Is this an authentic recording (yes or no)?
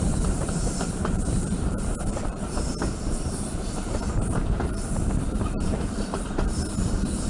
no